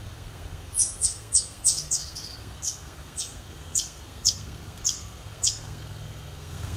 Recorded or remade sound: remade